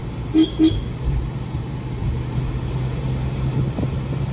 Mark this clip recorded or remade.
recorded